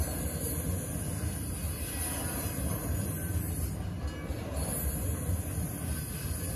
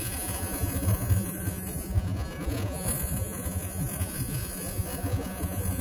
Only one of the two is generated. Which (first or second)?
second